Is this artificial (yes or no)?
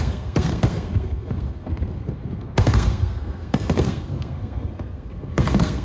yes